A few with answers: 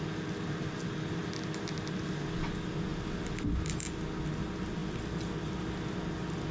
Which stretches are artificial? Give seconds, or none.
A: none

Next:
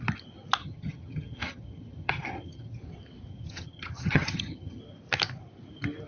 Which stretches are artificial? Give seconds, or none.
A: 0.6-2.8 (vocoder, HiFi-GAN); 3.3-4.8

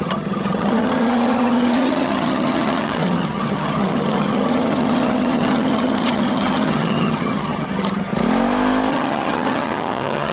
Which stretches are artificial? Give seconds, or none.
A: 0.0-8.1 (vocoder, HiFi-GAN); 8.9-10.3

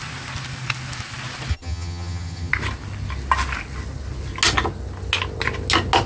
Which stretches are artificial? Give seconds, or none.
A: 1.5-2.5 (vocoder, HiFi-GAN)